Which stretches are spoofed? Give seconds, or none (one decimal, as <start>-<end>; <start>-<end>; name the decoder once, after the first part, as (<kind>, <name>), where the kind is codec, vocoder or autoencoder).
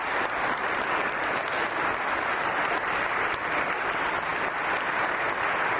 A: none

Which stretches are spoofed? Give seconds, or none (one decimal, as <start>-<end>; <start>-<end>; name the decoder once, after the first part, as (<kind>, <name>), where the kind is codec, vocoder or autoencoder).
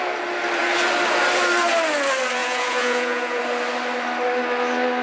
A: 2.4-3.4 (vocoder, Vocos)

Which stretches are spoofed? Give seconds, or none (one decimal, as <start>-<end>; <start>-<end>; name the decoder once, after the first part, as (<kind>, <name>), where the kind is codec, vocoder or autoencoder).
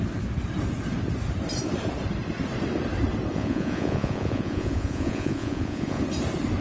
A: 3.3-6.0 (vocoder, Vocos)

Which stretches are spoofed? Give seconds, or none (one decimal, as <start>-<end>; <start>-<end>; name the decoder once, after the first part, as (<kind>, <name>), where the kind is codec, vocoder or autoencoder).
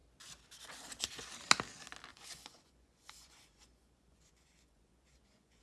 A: 2.1-5.6 (vocoder, Vocos)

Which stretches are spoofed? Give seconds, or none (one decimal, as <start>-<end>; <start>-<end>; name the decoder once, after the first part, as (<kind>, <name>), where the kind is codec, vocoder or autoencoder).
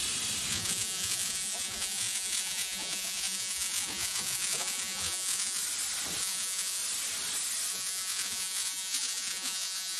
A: 0.5-5.6 (vocoder, Vocos); 6.2-6.8; 7.7-10.0